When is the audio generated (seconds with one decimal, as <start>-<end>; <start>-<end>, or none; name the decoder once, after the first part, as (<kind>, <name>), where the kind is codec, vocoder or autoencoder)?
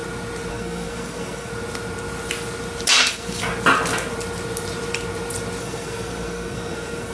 0.5-1.5 (codec, SNAC); 3.0-3.5; 5.6-7.1